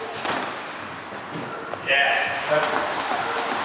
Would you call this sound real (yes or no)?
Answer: yes